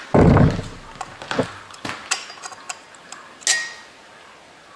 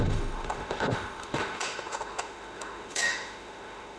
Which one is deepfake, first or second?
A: second